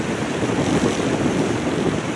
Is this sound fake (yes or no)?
no